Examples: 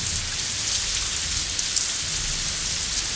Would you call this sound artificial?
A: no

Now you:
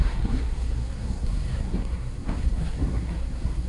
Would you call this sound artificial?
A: yes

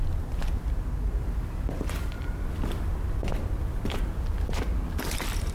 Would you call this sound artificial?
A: no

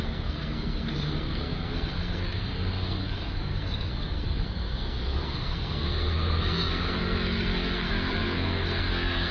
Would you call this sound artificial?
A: yes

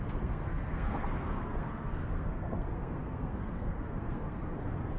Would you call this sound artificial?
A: yes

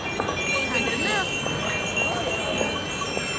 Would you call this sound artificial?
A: no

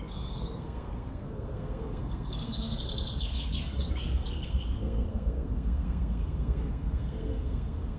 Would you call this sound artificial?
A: yes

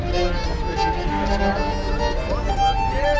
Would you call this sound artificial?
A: no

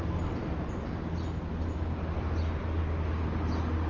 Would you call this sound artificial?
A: no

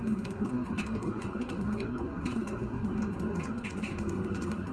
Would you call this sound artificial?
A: yes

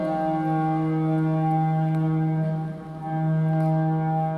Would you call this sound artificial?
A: no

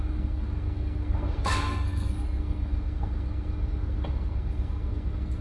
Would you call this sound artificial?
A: yes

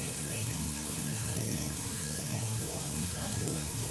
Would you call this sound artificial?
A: yes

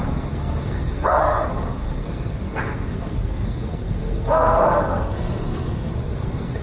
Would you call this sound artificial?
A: yes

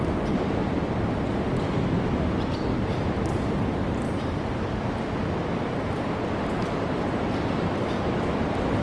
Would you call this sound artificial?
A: no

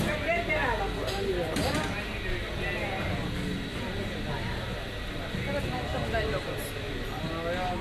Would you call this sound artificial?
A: no